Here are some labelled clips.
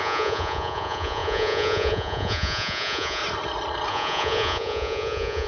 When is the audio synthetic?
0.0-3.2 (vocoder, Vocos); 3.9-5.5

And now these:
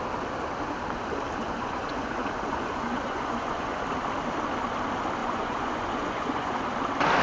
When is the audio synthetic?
1.4-3.8 (vocoder, Vocos); 5.2-6.6

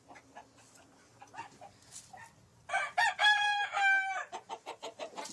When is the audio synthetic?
2.5-5.3 (vocoder, BigVGAN v2)

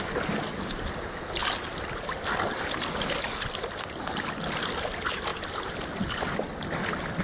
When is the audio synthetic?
none

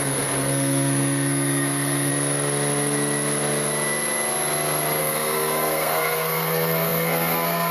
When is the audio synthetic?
0.0-2.1 (codec, SNAC); 5.0-7.7